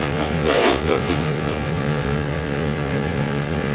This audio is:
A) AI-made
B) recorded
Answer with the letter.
A